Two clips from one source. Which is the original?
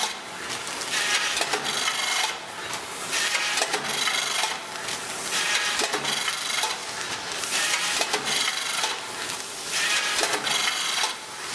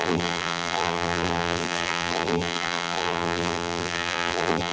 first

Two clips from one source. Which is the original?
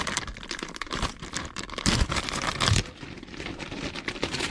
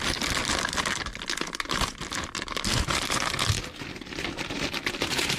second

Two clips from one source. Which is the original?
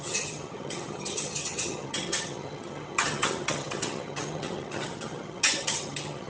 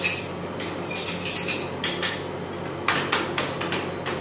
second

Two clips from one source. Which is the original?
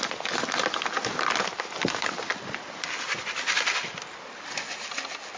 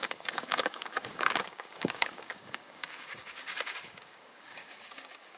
first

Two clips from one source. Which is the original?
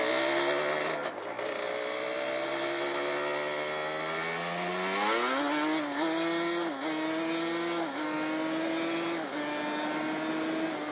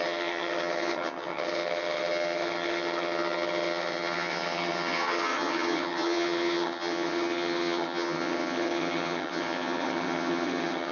first